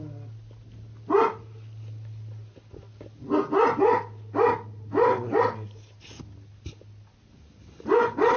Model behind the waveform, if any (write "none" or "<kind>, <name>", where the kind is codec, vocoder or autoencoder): none